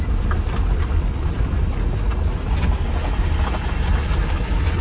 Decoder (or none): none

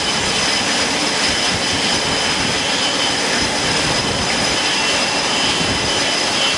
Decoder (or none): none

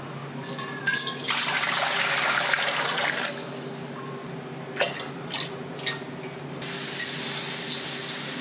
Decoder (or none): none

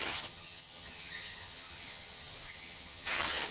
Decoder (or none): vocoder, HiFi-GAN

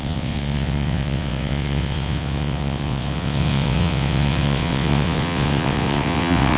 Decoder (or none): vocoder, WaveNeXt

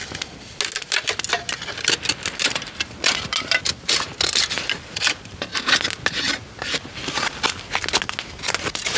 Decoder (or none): none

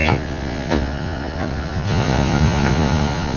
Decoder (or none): vocoder, Vocos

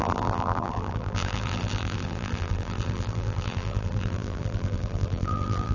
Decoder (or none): vocoder, BigVGAN v2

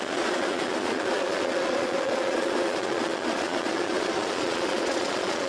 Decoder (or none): vocoder, Vocos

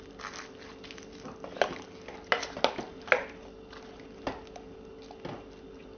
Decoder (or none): none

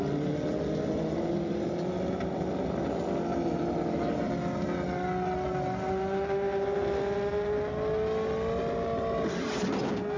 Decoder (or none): none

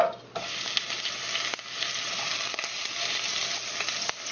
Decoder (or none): none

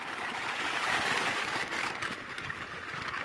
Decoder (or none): codec, DAC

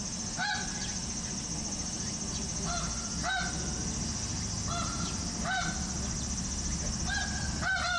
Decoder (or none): none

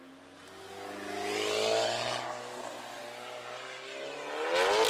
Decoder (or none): none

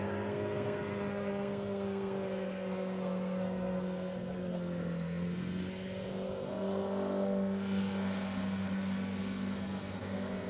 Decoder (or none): codec, SNAC